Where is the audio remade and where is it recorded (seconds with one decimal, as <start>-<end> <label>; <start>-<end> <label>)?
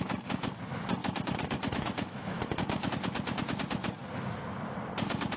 0.0-1.0 recorded; 1.0-2.9 remade; 2.9-5.4 recorded